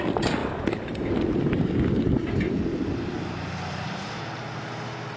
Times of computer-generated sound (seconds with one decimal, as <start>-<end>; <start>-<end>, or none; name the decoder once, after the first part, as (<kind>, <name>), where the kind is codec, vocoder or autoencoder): 0.4-2.0 (vocoder, BigVGAN v2); 2.7-4.2